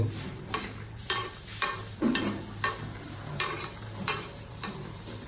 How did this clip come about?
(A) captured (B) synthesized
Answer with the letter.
B